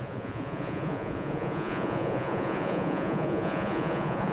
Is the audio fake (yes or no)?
yes